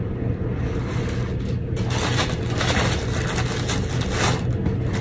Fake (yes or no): no